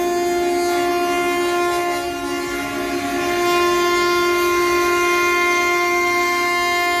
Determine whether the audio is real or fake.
real